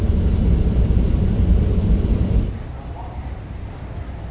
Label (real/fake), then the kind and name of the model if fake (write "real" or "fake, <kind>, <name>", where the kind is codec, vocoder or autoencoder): real